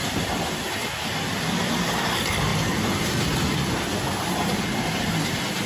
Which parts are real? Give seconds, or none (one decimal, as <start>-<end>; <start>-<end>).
0.5-5.7